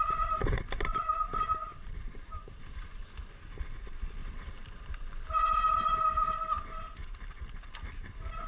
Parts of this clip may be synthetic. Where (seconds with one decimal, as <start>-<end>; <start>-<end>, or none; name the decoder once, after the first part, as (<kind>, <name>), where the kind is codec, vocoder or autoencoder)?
0.9-2.6 (vocoder, BigVGAN v2); 4.2-5.3